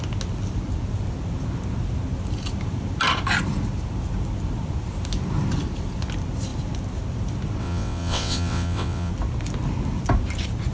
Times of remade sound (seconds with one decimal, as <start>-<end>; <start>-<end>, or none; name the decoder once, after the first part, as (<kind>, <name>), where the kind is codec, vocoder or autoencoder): 7.6-9.1 (vocoder, WaveNeXt)